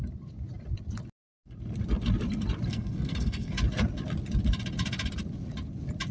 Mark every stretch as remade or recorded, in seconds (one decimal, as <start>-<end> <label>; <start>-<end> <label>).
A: 0.0-2.7 recorded; 2.7-3.5 remade; 3.5-6.1 recorded